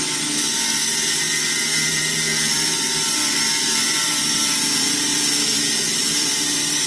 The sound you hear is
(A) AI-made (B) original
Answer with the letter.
A